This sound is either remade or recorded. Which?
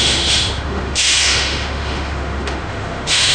remade